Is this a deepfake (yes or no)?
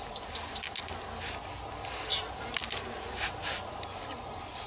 no